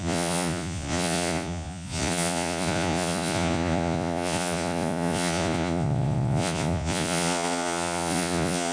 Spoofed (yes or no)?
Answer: yes